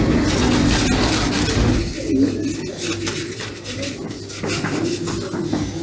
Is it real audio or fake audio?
real